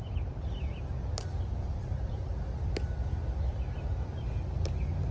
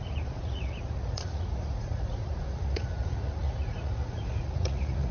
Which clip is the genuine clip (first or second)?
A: first